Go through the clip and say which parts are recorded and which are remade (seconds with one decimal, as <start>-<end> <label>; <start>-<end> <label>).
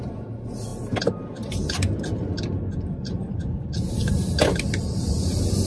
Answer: 0.0-5.7 recorded